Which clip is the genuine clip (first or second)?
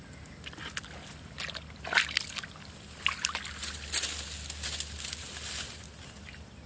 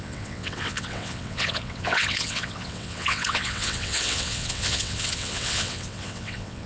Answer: first